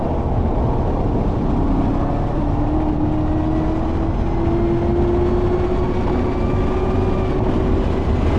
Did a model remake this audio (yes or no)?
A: no